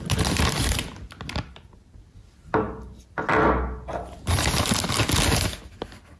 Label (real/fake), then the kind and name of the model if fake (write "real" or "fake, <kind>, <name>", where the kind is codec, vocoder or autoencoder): real